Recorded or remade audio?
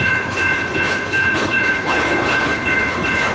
remade